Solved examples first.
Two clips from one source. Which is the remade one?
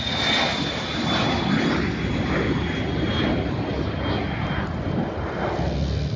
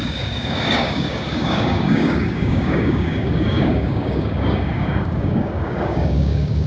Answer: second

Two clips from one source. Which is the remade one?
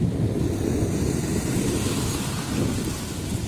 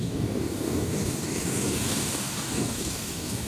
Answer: second